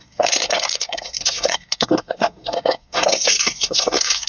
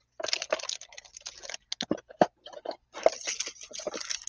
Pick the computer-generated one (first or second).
first